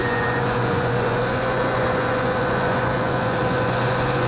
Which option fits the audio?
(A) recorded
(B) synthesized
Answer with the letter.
B